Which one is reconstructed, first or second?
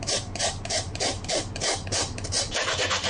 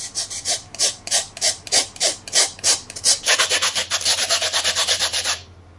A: first